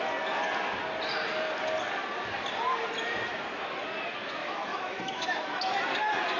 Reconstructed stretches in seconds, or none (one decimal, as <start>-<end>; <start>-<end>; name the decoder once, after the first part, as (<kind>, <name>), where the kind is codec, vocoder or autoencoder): 4.4-5.8 (autoencoder, DAC-VAE)